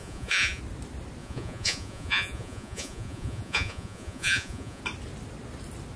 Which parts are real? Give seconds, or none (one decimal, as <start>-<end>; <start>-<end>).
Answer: 0.6-1.2; 4.8-6.0